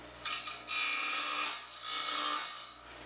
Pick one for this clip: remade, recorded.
recorded